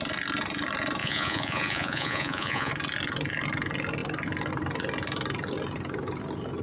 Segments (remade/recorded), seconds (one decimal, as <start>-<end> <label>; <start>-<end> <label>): 0.0-1.0 recorded; 1.0-2.7 remade; 2.7-6.6 recorded